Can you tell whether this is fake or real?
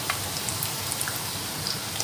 fake